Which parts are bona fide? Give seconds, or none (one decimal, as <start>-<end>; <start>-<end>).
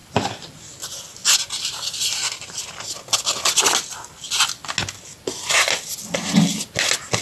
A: 0.0-7.2